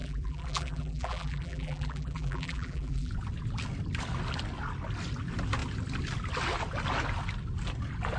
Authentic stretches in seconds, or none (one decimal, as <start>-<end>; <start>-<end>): 3.1-8.2